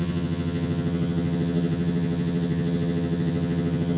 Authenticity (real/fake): fake